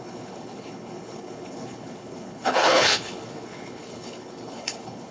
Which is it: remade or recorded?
remade